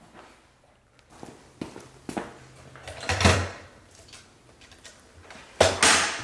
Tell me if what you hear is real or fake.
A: real